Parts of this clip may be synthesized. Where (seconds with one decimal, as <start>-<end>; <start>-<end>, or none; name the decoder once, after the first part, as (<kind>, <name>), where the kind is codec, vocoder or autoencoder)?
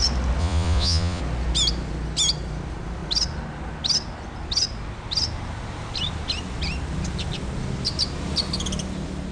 0.4-1.2 (vocoder, Vocos)